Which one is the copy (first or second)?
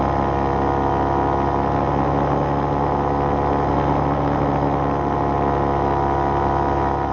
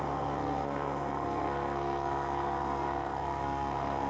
second